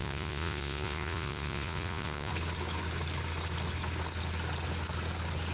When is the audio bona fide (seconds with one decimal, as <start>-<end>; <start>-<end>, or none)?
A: 2.3-5.5